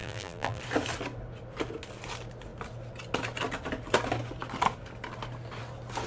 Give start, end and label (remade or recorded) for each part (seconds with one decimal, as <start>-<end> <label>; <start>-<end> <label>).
0.0-0.6 remade; 0.6-6.1 recorded

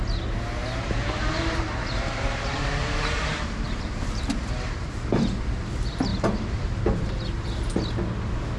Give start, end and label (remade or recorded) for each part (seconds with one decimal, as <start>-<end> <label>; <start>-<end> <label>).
0.0-0.6 recorded; 0.6-4.9 remade; 4.9-6.1 recorded; 6.1-7.1 remade; 7.1-8.6 recorded

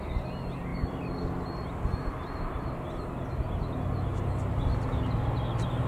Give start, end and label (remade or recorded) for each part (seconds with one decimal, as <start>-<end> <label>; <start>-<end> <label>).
0.0-0.7 recorded; 0.7-3.3 remade; 3.3-5.9 recorded